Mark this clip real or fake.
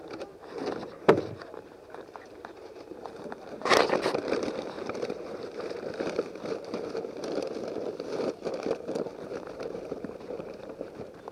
fake